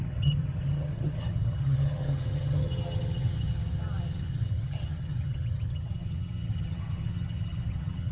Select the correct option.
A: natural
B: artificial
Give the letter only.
B